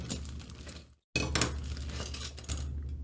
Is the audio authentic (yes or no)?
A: yes